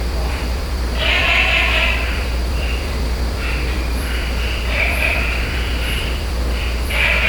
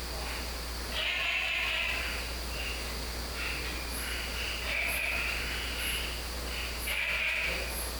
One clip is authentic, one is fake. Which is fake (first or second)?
first